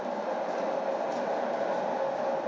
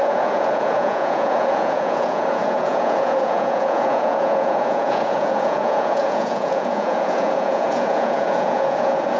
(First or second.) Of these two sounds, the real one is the first